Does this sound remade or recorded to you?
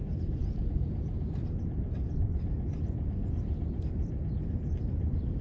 recorded